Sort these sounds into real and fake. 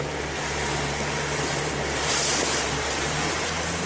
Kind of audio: fake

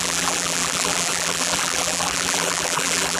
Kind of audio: fake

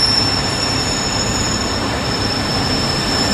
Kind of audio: fake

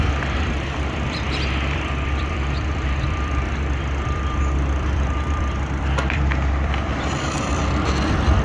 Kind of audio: fake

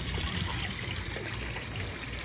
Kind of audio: fake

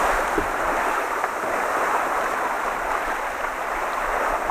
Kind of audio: real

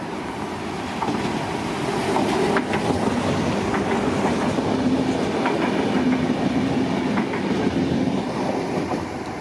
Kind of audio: real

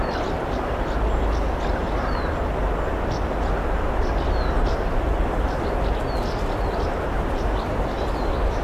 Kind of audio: real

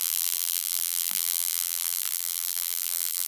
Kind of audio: fake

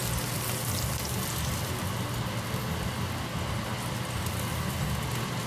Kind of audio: real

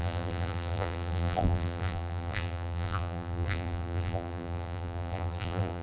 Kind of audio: fake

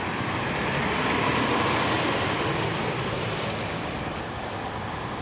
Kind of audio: fake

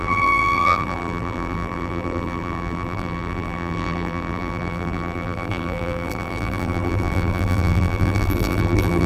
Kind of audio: fake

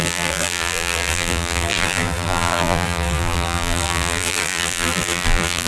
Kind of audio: fake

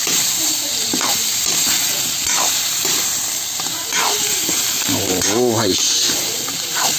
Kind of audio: fake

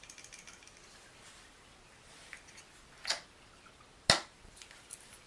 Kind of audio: real